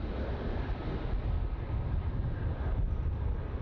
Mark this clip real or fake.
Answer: real